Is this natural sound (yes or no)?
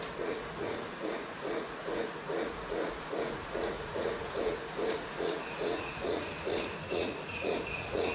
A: no